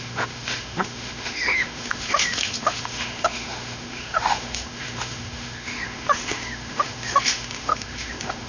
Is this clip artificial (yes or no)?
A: yes